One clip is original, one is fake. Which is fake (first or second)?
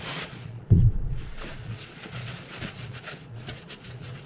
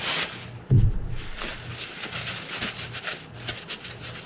first